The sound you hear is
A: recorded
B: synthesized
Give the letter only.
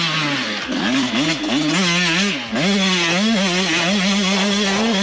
A